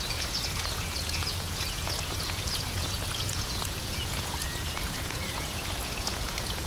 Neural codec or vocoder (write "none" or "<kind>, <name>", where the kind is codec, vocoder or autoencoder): vocoder, Vocos